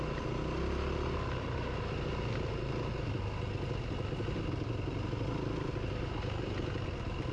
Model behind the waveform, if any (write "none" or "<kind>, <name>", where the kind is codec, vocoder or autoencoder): none